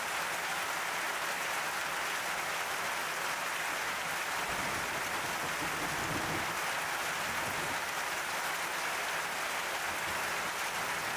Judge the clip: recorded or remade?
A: recorded